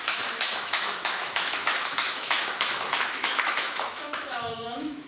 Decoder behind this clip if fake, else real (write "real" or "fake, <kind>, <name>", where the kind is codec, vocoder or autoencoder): fake, autoencoder, DAC-VAE